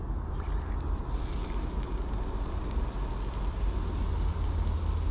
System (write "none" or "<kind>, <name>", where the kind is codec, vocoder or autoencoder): none